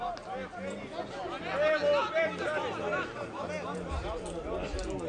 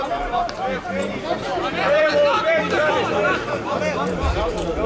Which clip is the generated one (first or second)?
second